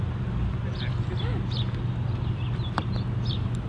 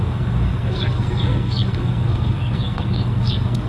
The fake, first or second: second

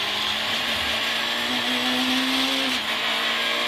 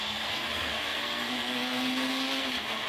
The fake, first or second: second